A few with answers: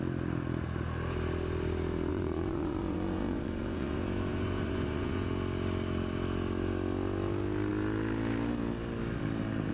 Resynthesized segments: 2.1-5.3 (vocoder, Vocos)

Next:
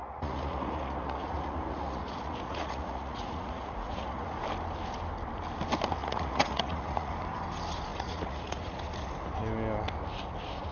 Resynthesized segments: 0.0-4.3 (vocoder, Vocos); 6.0-7.1; 7.9-8.8